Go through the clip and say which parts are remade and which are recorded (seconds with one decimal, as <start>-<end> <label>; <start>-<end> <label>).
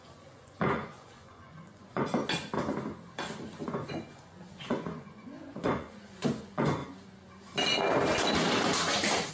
0.0-2.2 remade; 2.2-3.6 recorded; 3.6-6.8 remade; 6.8-9.3 recorded